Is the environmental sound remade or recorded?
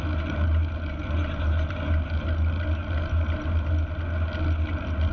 recorded